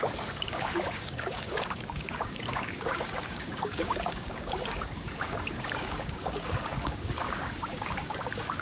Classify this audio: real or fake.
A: fake